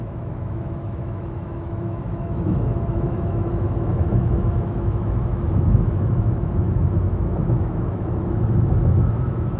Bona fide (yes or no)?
no